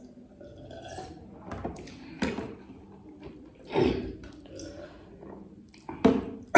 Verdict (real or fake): real